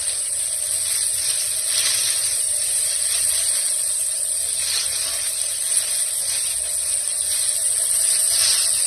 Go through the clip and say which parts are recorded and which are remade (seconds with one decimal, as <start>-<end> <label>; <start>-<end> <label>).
0.0-2.0 recorded; 2.0-2.8 remade; 2.8-8.9 recorded